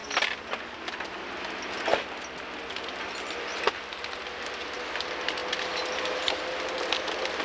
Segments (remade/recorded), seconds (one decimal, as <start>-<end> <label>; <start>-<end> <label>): 0.0-7.4 recorded